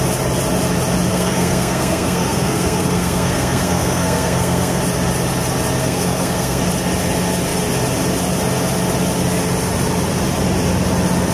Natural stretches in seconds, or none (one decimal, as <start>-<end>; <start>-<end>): 0.0-1.1; 4.8-5.8; 6.6-11.3